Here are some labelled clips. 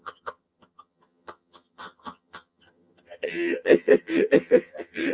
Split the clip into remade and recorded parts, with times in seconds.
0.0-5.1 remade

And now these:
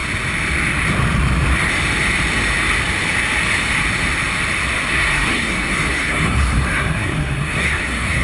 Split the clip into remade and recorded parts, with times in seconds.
0.0-4.9 recorded; 4.9-8.2 remade

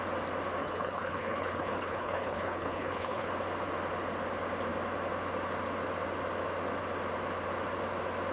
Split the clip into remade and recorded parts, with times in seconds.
0.0-0.6 recorded; 0.6-3.3 remade; 3.3-8.3 recorded

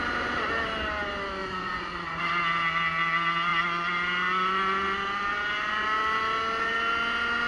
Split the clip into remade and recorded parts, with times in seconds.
0.0-1.4 recorded; 1.4-2.3 remade; 2.3-7.5 recorded

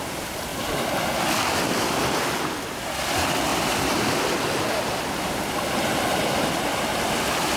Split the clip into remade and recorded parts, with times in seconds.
0.0-7.6 recorded

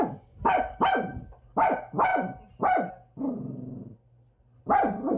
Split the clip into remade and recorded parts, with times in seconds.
0.0-5.2 recorded

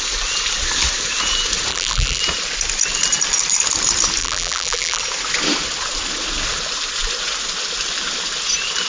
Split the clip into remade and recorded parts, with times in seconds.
0.0-1.7 recorded; 1.7-2.2 remade; 2.2-4.2 recorded; 4.2-5.0 remade; 5.0-8.9 recorded

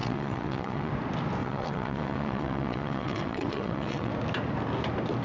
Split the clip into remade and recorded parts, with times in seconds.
0.0-0.9 remade; 0.9-1.4 recorded; 1.4-4.1 remade; 4.1-5.2 recorded